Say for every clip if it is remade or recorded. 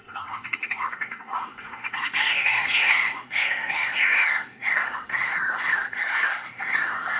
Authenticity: remade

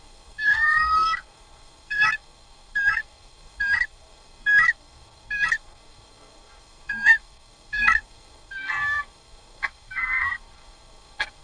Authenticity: remade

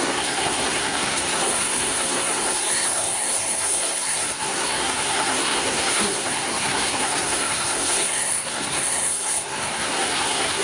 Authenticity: remade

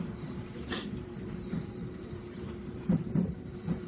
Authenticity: remade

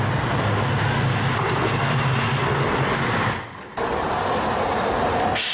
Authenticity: recorded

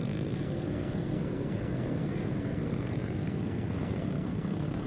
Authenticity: remade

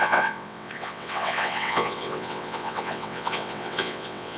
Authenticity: remade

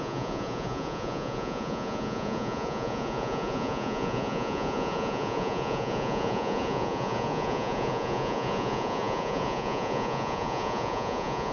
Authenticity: remade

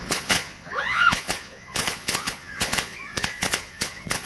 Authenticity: remade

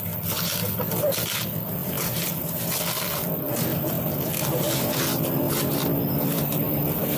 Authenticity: recorded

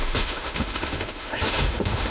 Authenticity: remade